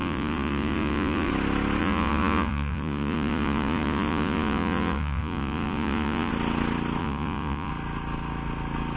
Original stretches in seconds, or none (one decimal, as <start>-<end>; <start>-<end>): 1.3-1.8; 6.3-7.0; 7.7-9.0